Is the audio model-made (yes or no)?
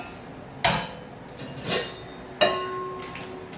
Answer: no